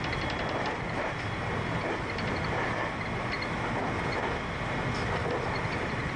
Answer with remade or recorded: recorded